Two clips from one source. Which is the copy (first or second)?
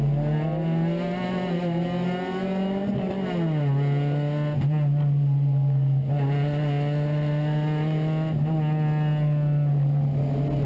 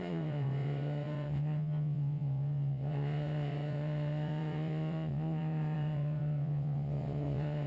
second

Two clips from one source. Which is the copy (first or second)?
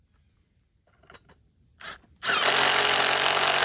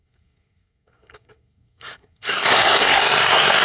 second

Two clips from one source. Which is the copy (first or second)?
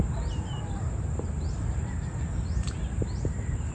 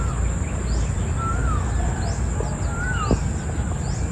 first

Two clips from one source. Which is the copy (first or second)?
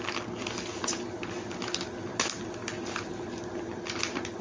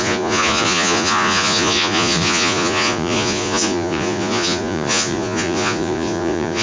second